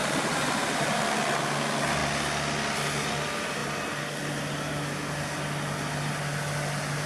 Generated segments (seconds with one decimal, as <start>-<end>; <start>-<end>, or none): 0.0-1.0